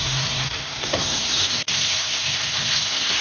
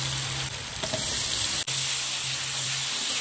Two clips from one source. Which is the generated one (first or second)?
first